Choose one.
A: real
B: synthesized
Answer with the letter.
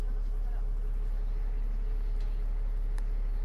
A